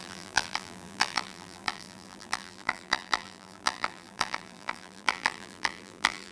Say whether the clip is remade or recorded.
remade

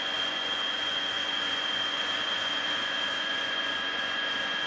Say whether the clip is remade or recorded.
remade